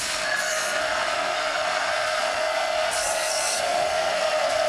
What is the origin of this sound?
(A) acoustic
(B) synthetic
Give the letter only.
B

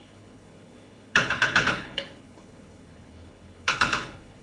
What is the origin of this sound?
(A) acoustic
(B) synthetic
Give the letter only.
B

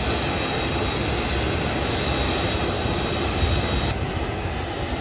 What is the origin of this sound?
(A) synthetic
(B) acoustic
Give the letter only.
B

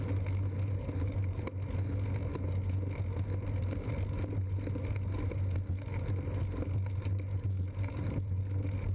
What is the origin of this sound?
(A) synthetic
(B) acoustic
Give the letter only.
B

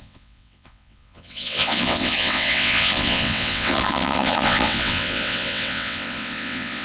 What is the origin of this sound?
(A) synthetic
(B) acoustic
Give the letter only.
A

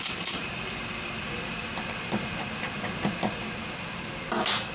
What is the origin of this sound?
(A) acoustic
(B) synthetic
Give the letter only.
A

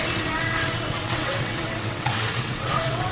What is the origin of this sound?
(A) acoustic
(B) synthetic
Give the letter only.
B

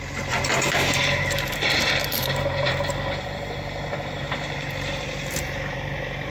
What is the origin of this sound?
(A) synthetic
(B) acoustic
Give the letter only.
A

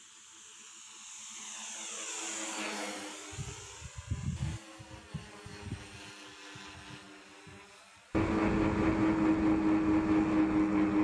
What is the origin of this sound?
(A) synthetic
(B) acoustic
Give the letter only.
B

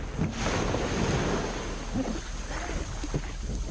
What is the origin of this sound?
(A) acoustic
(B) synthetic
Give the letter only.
A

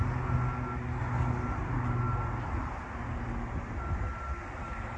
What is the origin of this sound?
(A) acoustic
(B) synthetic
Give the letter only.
A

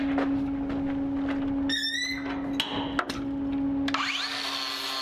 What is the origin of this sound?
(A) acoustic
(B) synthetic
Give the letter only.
A